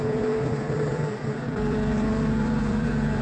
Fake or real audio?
fake